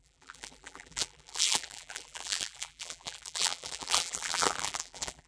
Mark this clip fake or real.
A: fake